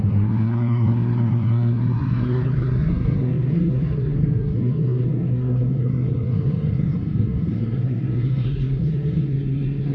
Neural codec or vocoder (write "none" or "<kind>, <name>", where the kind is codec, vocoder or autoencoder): codec, SNAC